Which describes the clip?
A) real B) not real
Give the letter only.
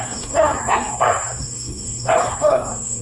B